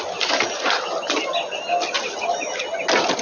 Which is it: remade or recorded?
recorded